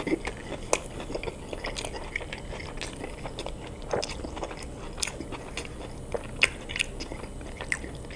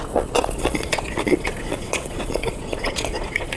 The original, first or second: first